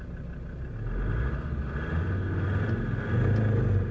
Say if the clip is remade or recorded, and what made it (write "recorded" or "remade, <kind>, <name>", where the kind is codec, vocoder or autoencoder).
recorded